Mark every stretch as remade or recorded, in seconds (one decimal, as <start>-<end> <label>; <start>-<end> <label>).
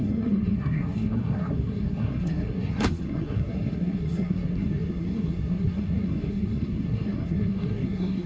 0.0-8.3 remade